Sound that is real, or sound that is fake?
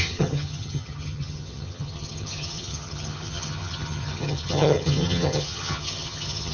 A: fake